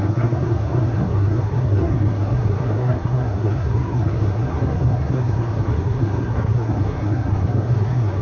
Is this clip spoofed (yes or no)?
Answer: yes